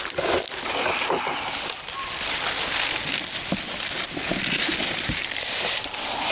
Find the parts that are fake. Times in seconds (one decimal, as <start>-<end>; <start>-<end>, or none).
none